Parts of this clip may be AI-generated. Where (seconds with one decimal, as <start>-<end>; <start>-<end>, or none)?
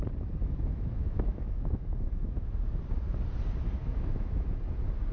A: 0.4-2.5; 3.8-4.6